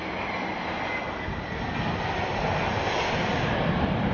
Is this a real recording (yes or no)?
yes